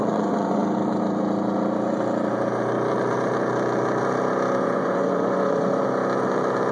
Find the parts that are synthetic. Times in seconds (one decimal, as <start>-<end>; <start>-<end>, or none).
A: 0.0-0.6; 4.6-5.7